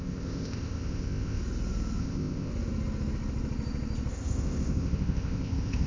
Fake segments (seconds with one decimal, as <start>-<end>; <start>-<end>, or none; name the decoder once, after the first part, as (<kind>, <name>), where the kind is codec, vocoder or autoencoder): 0.0-1.4 (codec, ZipCodec); 2.0-2.5; 4.1-5.9